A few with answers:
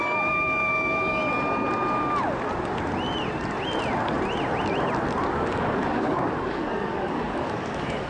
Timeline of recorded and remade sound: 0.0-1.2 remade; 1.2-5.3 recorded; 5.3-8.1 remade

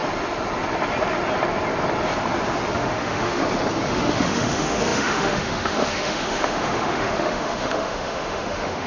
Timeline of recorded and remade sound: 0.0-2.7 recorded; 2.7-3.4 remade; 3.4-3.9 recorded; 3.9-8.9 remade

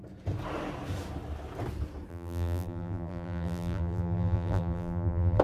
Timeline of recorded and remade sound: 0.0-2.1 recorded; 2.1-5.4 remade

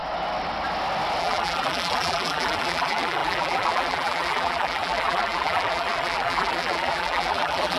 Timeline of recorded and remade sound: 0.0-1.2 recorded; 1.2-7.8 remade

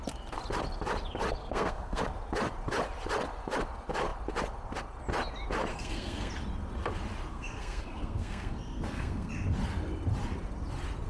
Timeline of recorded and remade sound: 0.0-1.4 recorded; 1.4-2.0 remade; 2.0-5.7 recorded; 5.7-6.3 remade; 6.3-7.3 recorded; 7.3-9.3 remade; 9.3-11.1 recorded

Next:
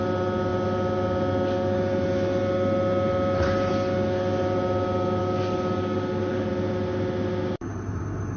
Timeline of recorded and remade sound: 0.0-5.2 recorded; 5.2-6.5 remade; 6.5-8.4 recorded